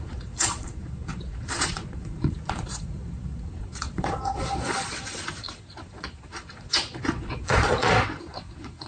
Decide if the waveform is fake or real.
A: fake